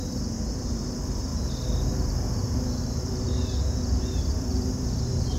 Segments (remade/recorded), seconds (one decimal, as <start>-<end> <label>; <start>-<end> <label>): 0.0-0.6 recorded; 0.6-1.3 remade; 1.3-1.9 recorded; 1.9-5.4 remade